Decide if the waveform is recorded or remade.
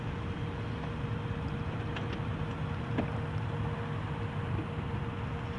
recorded